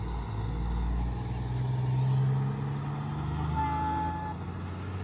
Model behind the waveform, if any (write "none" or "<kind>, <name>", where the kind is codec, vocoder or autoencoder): none